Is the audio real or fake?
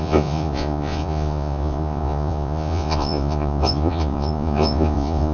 fake